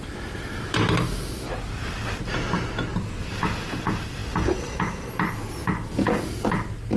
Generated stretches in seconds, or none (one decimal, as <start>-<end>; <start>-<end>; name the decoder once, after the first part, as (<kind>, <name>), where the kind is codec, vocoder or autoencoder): none